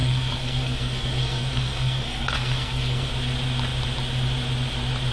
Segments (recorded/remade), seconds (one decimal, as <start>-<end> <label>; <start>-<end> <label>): 0.0-3.1 remade; 3.1-5.1 recorded